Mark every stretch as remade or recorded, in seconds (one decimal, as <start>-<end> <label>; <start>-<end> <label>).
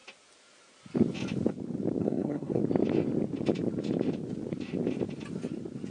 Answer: 0.0-2.0 recorded; 2.0-2.6 remade; 2.6-5.9 recorded